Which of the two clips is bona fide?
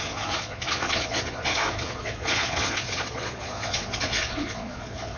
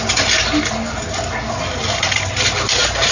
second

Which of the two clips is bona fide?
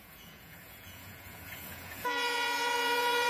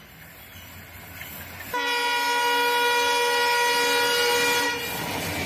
second